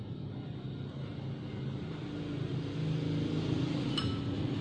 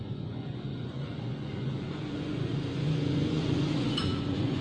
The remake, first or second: second